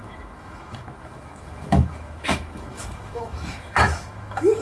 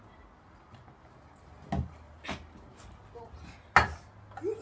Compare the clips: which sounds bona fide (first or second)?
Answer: second